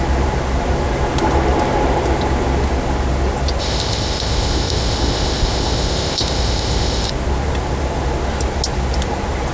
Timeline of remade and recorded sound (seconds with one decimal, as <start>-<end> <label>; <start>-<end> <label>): 0.0-3.6 recorded; 3.6-7.1 remade; 7.1-9.5 recorded

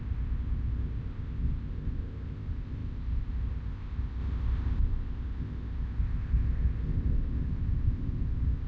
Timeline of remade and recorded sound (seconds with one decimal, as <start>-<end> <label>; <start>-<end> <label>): 0.0-8.7 remade